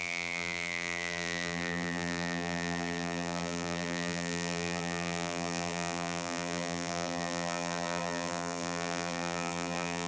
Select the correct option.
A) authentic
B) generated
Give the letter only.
B